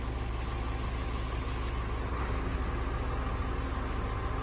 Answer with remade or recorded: recorded